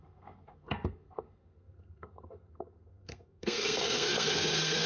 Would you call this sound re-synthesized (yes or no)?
yes